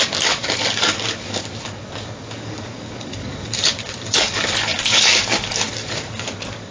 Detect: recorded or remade remade